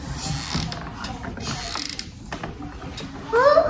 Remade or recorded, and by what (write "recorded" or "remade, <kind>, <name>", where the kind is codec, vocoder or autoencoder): recorded